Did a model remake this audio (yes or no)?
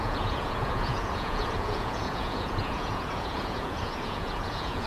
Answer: yes